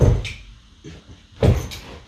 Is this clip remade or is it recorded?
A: recorded